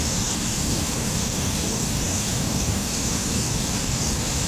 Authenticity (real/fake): fake